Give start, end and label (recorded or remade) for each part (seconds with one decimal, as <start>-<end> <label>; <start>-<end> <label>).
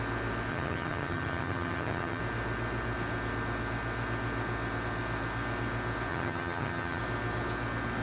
0.0-0.5 recorded; 0.5-2.2 remade; 2.2-6.1 recorded; 6.1-7.0 remade; 7.0-8.0 recorded